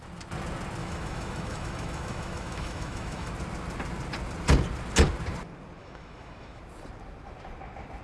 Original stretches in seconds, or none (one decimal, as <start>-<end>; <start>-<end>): 0.0-0.8; 3.3-5.8; 6.6-8.0

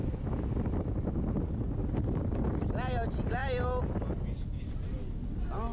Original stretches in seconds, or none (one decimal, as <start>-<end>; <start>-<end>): 0.0-5.7

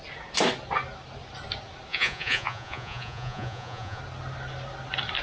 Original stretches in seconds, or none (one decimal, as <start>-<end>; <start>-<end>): 0.0-1.9; 4.0-5.2